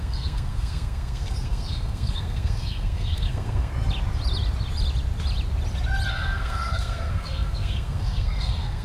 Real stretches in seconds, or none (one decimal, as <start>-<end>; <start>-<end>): 3.7-6.1